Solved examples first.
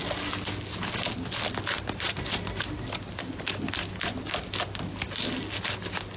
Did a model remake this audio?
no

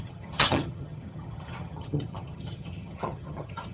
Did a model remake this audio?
yes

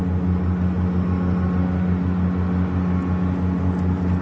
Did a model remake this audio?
no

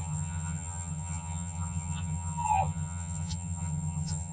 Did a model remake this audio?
yes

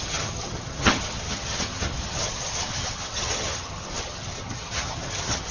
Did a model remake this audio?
yes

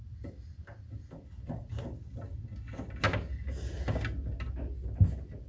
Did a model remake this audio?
no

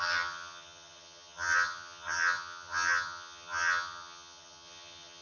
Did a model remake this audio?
yes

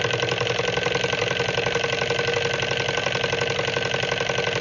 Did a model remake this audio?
no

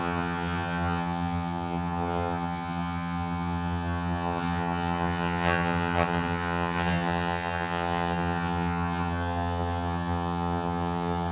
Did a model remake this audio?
yes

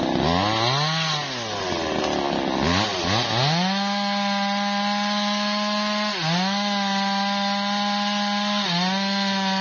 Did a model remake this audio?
no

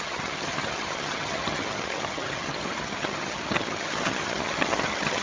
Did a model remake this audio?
yes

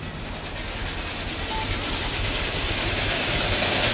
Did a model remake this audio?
no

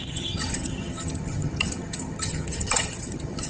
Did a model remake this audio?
yes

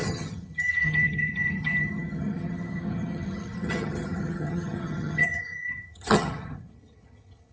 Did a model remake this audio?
yes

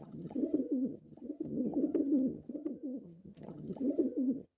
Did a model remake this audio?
yes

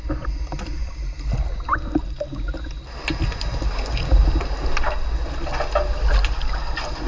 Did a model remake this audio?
no